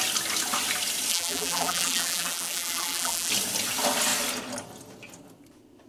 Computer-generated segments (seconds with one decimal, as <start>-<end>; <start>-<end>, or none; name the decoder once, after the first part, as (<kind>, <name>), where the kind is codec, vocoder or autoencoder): 1.1-3.3 (vocoder, BigVGAN v2)